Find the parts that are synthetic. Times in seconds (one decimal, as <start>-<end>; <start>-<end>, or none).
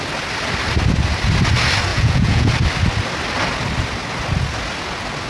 1.9-2.5